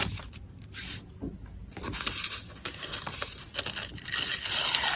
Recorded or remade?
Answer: recorded